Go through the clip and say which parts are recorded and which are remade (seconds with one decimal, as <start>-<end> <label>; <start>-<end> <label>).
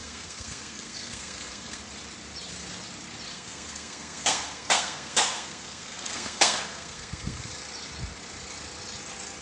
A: 0.0-1.8 remade; 1.8-3.3 recorded; 3.3-7.5 remade; 7.5-9.4 recorded